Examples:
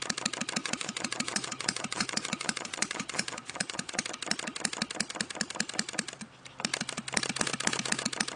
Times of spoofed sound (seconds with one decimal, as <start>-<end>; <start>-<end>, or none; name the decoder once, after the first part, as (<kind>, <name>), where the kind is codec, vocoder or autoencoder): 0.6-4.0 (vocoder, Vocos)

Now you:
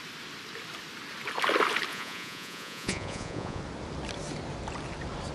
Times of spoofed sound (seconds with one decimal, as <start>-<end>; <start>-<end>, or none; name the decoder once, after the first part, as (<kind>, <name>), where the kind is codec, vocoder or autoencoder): 1.9-3.6 (vocoder, Vocos)

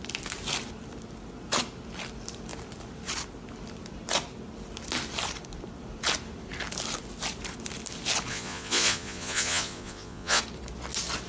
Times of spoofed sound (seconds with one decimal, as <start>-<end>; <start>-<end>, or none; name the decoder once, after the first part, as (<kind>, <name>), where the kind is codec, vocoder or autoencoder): 8.3-10.4 (vocoder, Vocos)

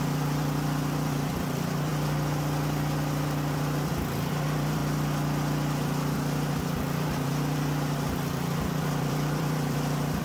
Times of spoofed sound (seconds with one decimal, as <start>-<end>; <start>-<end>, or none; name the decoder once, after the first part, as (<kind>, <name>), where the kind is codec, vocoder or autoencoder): 0.0-1.9 (vocoder, BigVGAN v2); 4.3-4.8; 6.6-10.2

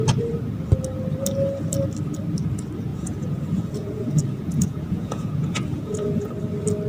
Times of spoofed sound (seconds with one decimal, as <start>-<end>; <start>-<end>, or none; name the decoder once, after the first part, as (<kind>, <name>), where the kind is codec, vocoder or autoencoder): 2.9-6.3 (vocoder, Vocos)